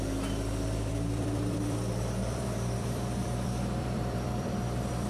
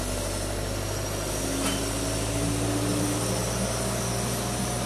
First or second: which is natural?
second